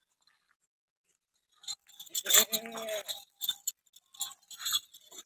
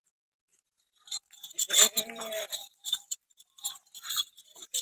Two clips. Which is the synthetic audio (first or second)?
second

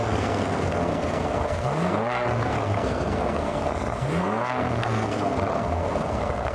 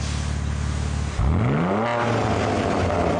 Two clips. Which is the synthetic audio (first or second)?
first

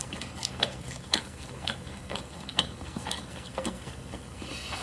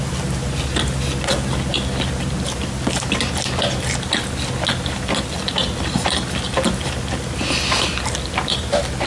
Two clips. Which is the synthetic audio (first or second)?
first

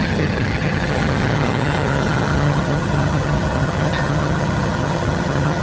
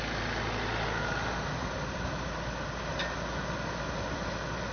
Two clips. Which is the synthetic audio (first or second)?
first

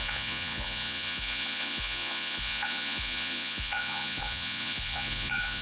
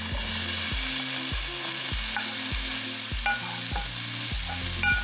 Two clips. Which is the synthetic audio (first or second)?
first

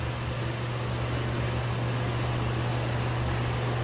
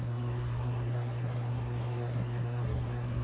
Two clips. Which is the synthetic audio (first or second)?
second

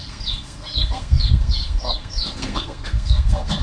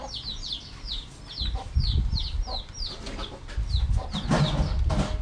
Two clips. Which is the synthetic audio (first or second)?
first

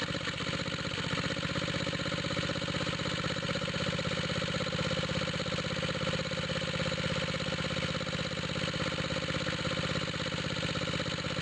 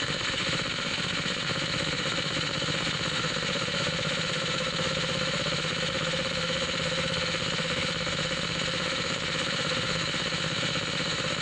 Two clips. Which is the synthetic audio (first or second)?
second